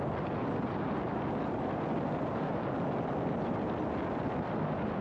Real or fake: real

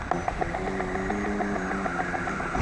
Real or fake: real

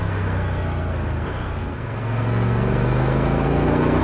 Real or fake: fake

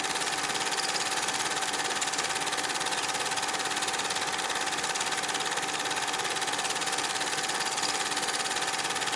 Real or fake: real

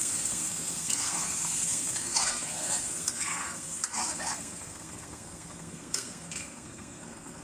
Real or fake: fake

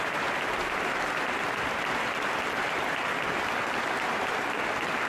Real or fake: real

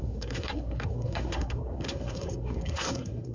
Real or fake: fake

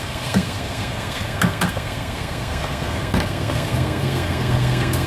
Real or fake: fake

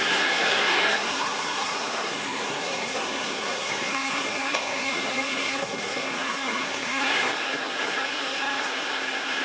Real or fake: fake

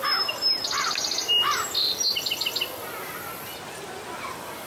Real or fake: real